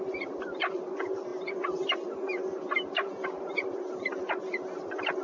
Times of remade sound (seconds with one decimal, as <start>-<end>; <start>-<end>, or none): none